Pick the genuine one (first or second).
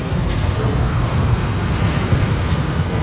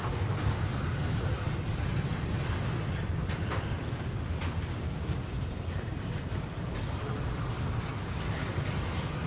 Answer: second